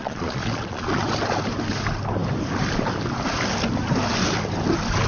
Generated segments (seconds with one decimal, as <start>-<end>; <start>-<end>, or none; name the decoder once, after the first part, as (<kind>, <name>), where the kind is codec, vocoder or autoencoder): 0.0-1.0 (vocoder, Vocos)